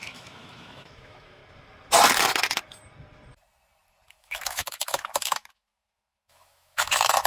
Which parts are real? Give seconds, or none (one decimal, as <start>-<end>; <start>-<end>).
1.4-4.1